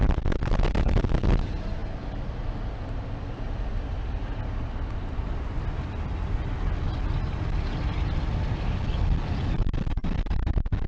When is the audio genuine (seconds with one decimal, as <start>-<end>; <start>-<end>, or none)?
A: 0.0-10.9